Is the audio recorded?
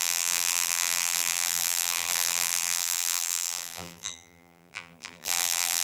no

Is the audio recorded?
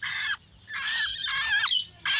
yes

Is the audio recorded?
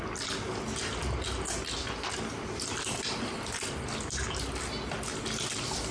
yes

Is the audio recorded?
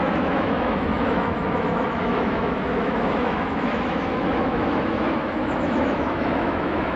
no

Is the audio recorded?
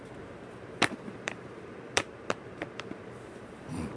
no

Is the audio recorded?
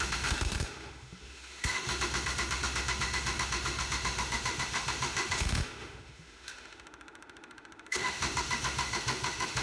no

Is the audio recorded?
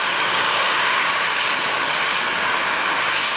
no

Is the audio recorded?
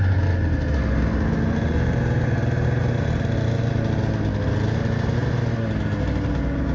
yes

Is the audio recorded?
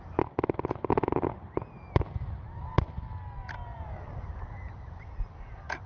yes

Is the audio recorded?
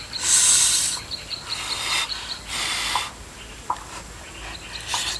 yes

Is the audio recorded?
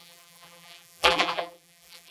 no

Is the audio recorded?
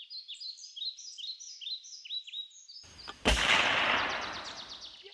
yes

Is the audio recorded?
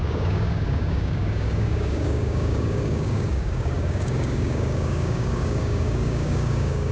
no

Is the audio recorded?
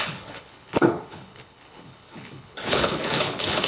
no